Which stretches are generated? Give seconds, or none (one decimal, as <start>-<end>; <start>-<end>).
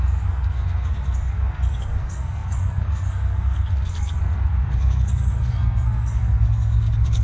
0.0-7.2